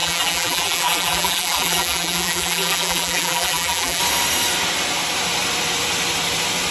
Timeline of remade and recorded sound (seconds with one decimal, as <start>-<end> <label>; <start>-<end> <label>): 0.0-4.0 remade; 4.0-6.7 recorded